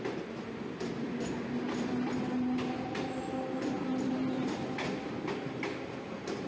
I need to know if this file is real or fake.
real